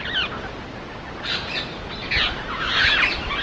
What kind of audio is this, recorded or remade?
recorded